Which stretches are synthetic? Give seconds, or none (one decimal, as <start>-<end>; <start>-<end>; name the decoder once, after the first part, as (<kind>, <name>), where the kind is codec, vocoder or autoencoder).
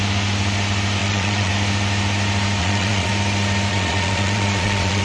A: 1.0-1.5 (vocoder, Vocos); 2.6-3.1; 3.7-5.0